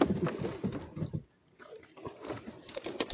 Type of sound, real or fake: real